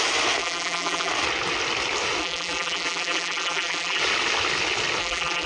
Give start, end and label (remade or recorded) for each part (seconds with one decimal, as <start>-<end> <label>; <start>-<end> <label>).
0.0-0.4 recorded; 0.4-1.1 remade; 1.1-2.2 recorded; 2.2-4.0 remade; 4.0-5.0 recorded; 5.0-5.5 remade